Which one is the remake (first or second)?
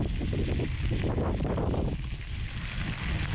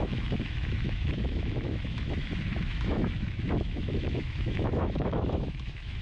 second